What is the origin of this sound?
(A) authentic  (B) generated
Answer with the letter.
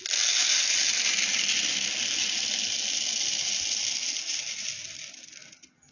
A